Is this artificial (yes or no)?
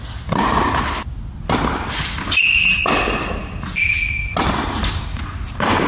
no